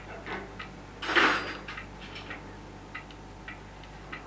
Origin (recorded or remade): recorded